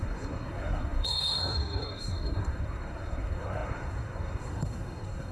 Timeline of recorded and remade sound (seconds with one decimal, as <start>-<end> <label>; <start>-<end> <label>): 0.0-5.3 remade